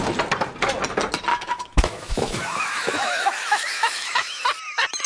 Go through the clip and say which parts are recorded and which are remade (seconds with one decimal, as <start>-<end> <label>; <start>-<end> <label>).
0.0-1.3 recorded; 1.3-4.4 remade; 4.4-5.1 recorded